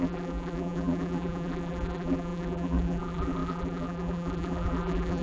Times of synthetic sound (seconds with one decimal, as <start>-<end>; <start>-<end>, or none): 0.0-5.2

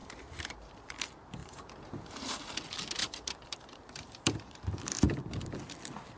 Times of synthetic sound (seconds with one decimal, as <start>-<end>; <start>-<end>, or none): 0.0-0.8; 1.4-2.3; 3.0-4.6

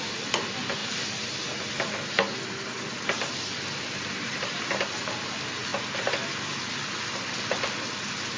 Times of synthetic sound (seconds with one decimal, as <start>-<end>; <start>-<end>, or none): none

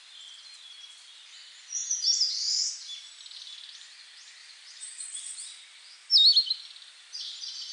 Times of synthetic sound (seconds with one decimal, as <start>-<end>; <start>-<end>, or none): 1.8-3.2; 4.4-5.2

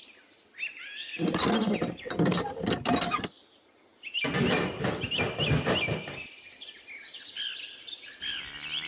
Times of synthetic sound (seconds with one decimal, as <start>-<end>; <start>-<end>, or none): 1.6-4.8

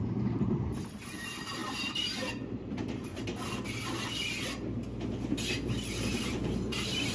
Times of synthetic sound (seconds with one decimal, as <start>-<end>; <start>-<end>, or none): 0.0-1.6; 2.5-3.1; 5.7-7.1

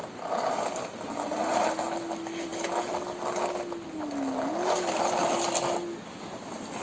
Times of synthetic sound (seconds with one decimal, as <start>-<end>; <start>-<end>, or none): none

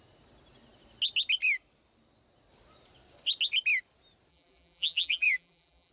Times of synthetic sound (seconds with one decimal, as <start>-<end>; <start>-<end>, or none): 4.3-5.9